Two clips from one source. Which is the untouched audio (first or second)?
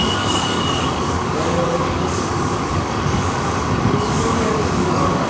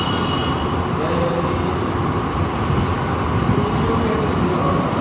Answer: second